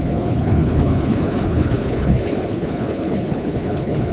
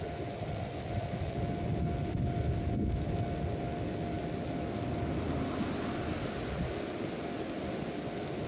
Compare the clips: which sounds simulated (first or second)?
first